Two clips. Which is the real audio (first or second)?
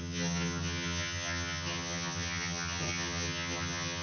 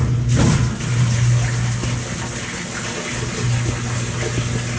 second